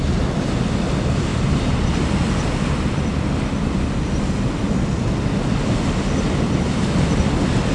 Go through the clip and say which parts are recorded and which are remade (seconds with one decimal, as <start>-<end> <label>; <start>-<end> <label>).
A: 0.0-7.7 recorded